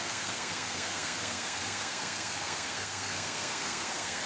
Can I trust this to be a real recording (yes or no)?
no